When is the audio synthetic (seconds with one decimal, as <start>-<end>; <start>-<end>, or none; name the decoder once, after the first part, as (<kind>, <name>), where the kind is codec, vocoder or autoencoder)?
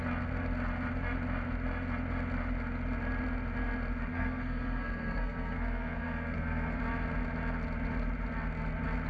4.1-6.8 (codec, SNAC)